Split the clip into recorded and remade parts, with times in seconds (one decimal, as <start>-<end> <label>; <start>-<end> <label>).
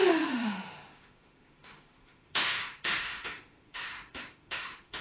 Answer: 0.0-5.0 remade